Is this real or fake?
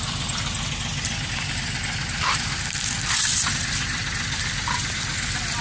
real